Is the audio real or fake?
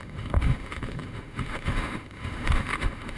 fake